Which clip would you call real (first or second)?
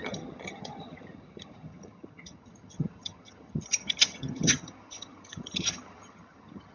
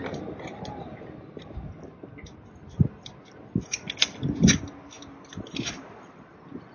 second